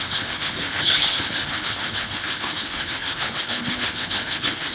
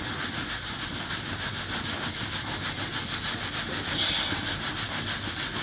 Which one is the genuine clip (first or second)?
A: second